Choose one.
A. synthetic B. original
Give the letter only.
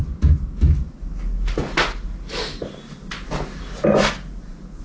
B